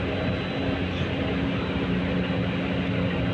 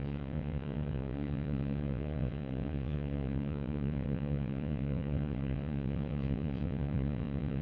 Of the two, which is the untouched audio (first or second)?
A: first